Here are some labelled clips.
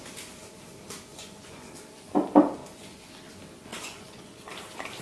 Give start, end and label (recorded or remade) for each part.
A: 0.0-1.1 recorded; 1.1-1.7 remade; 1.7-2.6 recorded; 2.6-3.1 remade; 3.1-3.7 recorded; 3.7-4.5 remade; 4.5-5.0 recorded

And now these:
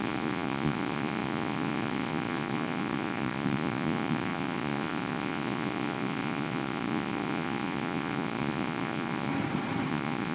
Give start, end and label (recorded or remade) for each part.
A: 0.0-9.3 remade; 9.3-9.9 recorded; 9.9-10.3 remade

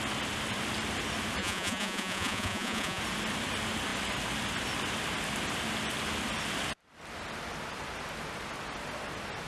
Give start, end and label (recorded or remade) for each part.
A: 0.0-1.4 recorded; 1.4-3.0 remade; 3.0-9.5 recorded

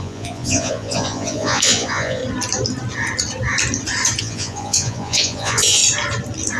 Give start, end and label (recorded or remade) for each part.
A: 0.0-2.2 remade; 2.2-4.2 recorded; 4.2-5.8 remade; 5.8-6.6 recorded

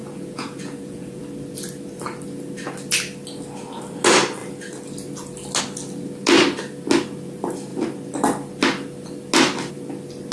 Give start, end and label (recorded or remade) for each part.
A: 0.0-1.2 remade; 1.2-10.3 recorded

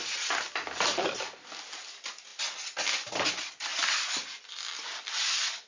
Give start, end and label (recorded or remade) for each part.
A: 0.0-5.7 recorded

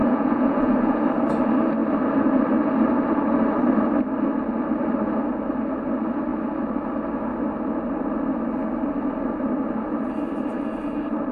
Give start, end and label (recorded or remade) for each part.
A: 0.0-1.0 remade; 1.0-11.3 recorded

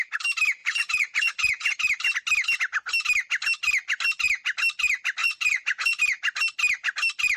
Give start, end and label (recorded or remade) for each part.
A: 0.0-0.6 recorded; 0.6-1.7 remade; 1.7-5.2 recorded; 5.2-6.0 remade; 6.0-7.4 recorded